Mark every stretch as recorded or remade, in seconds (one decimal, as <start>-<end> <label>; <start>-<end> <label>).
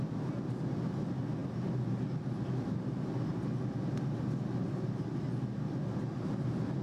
0.0-6.8 recorded